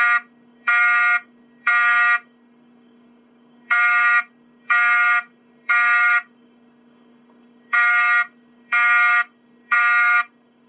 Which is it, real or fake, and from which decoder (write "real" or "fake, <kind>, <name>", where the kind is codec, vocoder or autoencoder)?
fake, codec, DAC